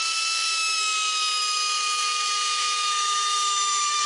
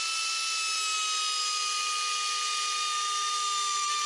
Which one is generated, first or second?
first